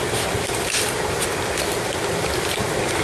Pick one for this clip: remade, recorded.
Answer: recorded